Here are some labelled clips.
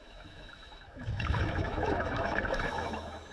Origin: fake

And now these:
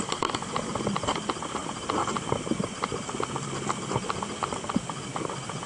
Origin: real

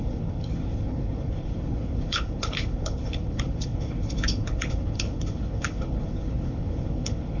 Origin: fake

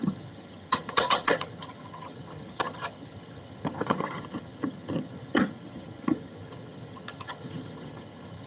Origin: fake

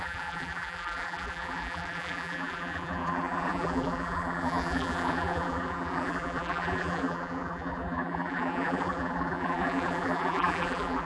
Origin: fake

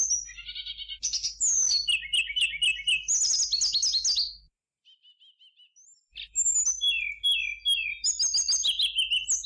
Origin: real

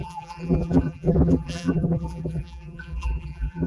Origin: fake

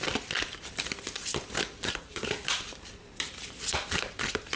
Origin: fake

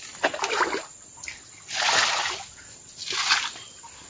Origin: real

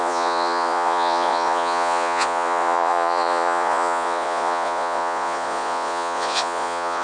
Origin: fake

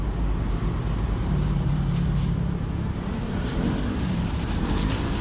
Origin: fake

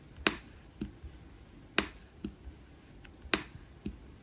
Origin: real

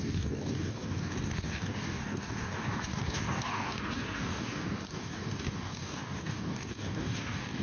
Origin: fake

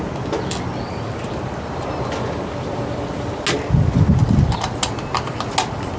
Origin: real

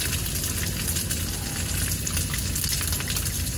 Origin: real